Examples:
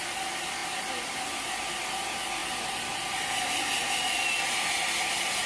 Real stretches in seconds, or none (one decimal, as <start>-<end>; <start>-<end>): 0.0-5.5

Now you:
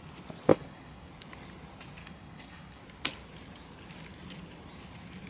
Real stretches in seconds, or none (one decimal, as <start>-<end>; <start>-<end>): 0.0-0.5; 1.1-2.0; 2.8-5.3

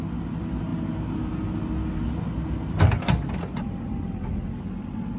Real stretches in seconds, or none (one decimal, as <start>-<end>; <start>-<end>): 0.0-5.2